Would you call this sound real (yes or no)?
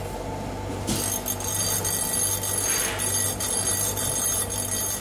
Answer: yes